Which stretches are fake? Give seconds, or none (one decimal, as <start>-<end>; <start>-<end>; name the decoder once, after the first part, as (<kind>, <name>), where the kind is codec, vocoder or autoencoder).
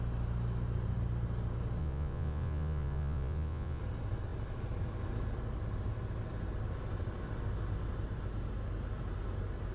1.8-3.8 (vocoder, Vocos)